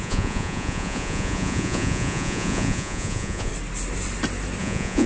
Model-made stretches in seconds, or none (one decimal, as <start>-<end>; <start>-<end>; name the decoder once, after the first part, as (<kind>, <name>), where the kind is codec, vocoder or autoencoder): 0.0-3.5 (vocoder, Vocos); 4.6-5.1